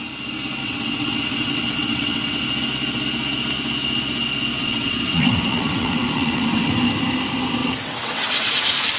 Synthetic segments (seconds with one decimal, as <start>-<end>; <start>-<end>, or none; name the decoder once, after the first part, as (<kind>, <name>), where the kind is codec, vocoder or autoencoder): 0.6-2.4 (vocoder, WaveNeXt); 4.6-6.7; 7.6-8.5